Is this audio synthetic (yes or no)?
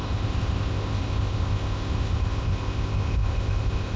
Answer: yes